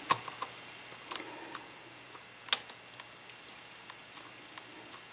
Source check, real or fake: real